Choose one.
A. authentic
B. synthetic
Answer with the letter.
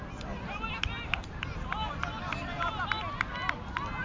A